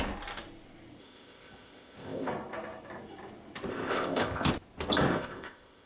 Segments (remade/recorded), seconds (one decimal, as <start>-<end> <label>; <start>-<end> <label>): 0.0-1.0 recorded; 1.0-2.3 remade; 2.3-3.7 recorded; 3.7-4.5 remade; 4.5-5.1 recorded; 5.1-5.9 remade